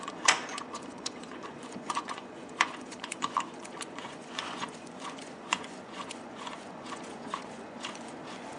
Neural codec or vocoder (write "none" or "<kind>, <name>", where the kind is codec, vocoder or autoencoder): vocoder, Vocos